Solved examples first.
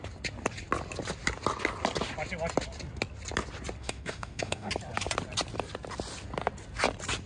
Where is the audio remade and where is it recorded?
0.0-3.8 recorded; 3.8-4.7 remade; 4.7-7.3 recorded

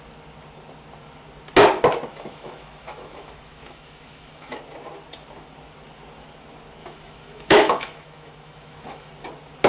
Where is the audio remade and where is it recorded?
0.0-2.1 recorded; 2.1-4.6 remade; 4.6-6.8 recorded; 6.8-9.1 remade; 9.1-9.7 recorded

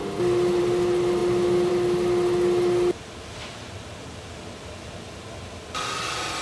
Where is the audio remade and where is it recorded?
0.0-6.4 recorded

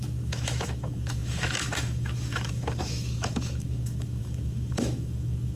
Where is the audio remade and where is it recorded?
0.0-5.6 remade

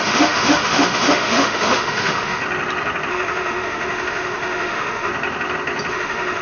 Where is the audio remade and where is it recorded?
0.0-2.4 remade; 2.4-3.1 recorded; 3.1-5.1 remade; 5.1-5.9 recorded; 5.9-6.4 remade

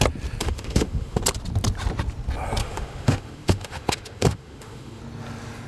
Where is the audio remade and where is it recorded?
0.0-0.4 recorded; 0.4-1.2 remade; 1.2-2.6 recorded; 2.6-5.0 remade; 5.0-5.7 recorded

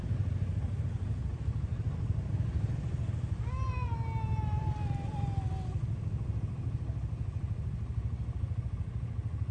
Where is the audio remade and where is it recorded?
0.0-9.5 recorded